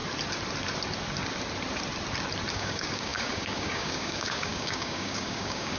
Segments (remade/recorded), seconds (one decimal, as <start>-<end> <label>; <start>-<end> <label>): 0.0-2.5 recorded; 2.5-5.8 remade